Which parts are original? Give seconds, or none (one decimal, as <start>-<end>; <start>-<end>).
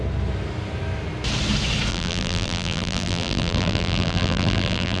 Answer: 0.0-1.9